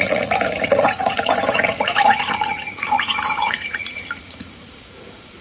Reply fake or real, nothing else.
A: fake